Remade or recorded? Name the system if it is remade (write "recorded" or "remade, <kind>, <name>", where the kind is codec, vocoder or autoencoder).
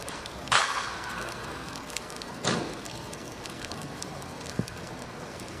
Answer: remade, codec, SNAC